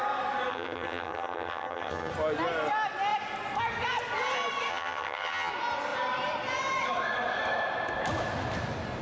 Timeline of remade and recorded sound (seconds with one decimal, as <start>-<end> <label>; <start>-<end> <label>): 0.0-0.5 recorded; 0.5-2.1 remade; 2.1-4.7 recorded; 4.7-5.5 remade; 5.5-9.0 recorded